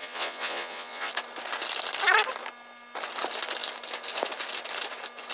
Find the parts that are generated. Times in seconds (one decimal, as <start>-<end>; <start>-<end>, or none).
0.0-1.1